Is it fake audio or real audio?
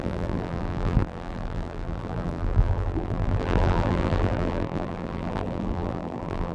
fake